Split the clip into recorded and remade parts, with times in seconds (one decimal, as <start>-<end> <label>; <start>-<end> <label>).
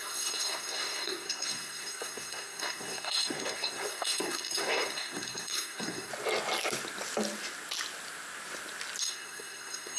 0.0-6.1 remade; 6.1-9.0 recorded; 9.0-10.0 remade